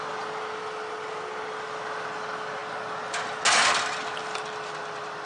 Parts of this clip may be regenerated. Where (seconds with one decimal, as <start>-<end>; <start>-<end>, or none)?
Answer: none